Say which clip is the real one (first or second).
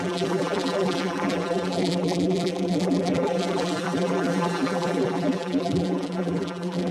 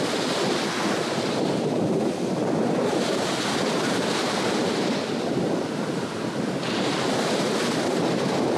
second